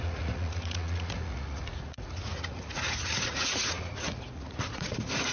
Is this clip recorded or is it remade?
remade